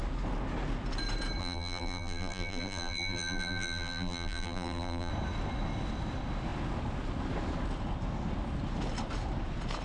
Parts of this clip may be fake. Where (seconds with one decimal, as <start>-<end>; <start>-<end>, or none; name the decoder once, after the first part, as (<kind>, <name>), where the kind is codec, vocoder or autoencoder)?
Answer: 1.4-5.1 (vocoder, BigVGAN v2)